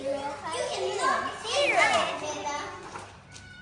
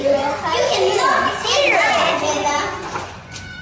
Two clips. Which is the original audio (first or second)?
first